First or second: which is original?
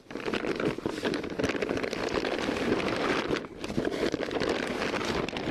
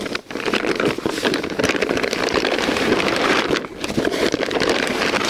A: first